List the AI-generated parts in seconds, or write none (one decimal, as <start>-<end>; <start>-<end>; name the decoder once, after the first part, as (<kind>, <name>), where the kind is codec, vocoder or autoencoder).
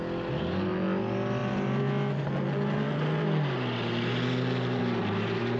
none